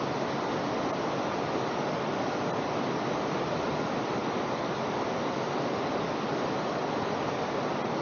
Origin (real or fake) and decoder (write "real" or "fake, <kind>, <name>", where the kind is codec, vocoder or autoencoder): real